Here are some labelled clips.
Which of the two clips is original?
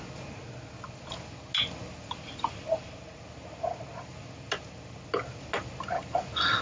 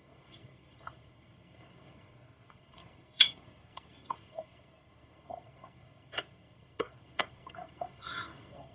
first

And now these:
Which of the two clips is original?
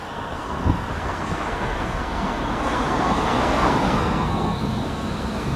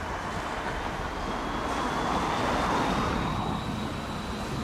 second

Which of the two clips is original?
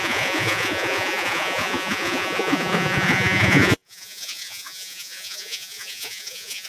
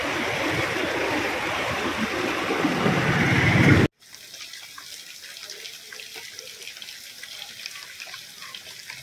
second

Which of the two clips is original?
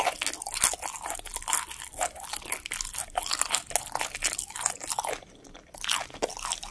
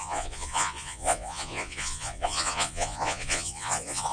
first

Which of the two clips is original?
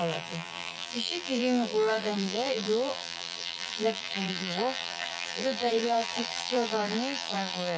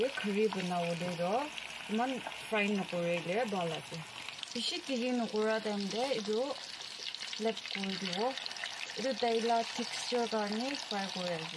second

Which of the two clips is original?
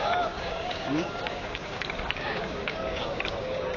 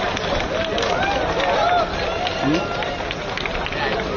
second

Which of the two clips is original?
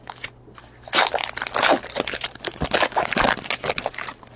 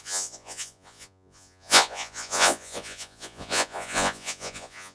first